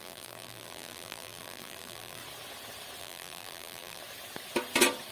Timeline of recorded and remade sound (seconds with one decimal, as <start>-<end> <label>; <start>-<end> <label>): 0.0-2.2 remade; 2.2-3.0 recorded; 3.0-4.0 remade; 4.0-5.1 recorded